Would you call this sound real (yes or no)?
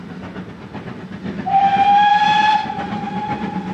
yes